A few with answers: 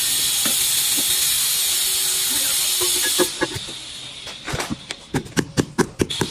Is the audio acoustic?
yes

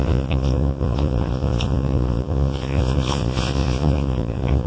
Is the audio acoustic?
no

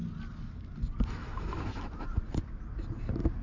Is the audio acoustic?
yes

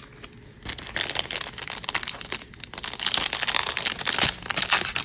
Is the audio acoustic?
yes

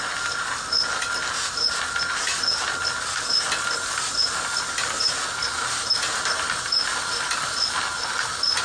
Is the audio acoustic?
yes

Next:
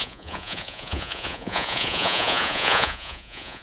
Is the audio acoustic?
no